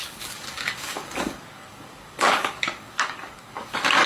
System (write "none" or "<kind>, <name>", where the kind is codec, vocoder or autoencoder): codec, DAC